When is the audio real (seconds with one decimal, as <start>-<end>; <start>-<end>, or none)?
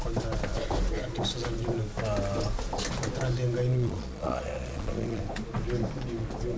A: 0.0-3.7; 5.2-6.6